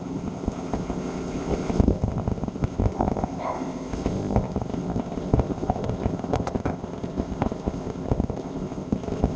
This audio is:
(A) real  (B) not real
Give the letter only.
B